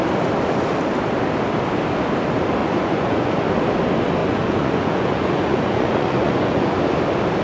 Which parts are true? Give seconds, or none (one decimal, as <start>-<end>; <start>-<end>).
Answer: 0.0-2.6; 3.6-4.2; 6.8-7.4